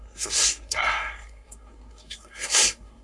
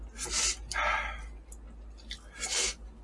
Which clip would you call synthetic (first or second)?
first